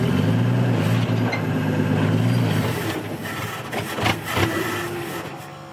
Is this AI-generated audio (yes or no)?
no